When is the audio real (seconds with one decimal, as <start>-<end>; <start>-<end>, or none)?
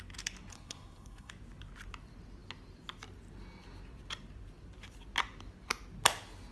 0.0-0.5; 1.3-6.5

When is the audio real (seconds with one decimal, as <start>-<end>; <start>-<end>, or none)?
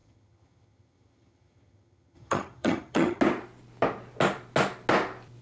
3.2-5.4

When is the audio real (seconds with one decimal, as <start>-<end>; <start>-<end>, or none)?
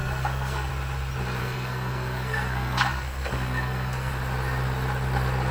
0.7-1.4; 4.1-5.5